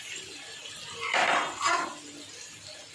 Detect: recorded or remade recorded